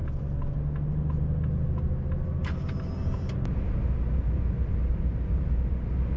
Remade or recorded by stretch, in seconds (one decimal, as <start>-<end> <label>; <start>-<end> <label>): 0.0-6.2 recorded

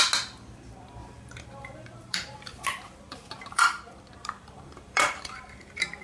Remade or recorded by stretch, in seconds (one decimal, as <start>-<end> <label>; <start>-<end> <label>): 0.0-1.0 recorded; 1.0-3.6 remade; 3.6-4.2 recorded; 4.2-6.0 remade

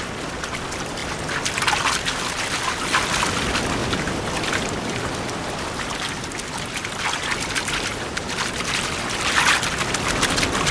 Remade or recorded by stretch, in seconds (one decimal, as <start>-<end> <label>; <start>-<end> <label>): 0.0-3.8 recorded; 3.8-4.9 remade; 4.9-7.9 recorded; 7.9-8.7 remade; 8.7-10.7 recorded

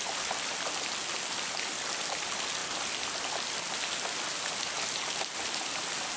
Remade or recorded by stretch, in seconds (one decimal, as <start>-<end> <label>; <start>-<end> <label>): 0.0-6.2 recorded

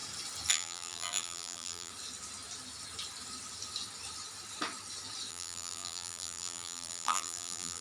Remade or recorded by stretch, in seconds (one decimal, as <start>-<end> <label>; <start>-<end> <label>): 0.0-0.5 recorded; 0.5-1.9 remade; 1.9-5.3 recorded; 5.3-7.8 remade

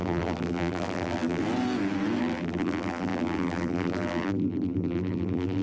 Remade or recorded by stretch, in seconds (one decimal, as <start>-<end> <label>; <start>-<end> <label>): 0.0-1.4 remade; 1.4-2.2 recorded; 2.2-5.6 remade

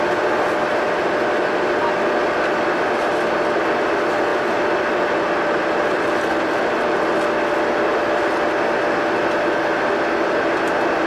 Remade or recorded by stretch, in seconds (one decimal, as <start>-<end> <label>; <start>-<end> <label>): 0.0-11.1 recorded